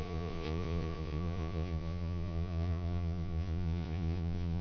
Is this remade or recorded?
remade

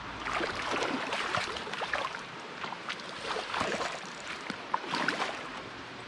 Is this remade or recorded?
remade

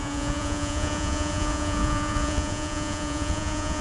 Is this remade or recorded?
remade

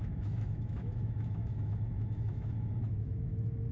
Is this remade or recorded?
remade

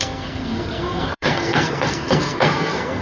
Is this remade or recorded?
remade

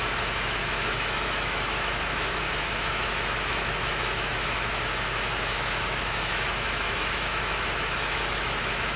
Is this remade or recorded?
remade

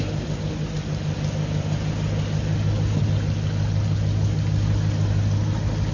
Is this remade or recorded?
recorded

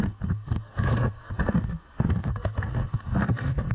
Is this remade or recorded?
remade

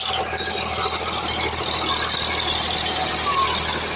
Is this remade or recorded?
recorded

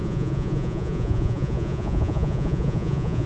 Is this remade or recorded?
remade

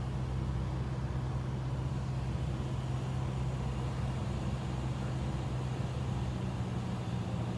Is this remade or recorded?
recorded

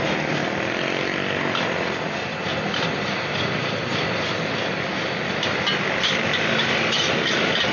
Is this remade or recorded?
recorded